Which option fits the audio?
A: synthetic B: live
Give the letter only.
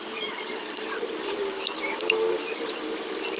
A